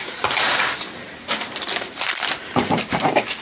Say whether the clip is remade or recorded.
remade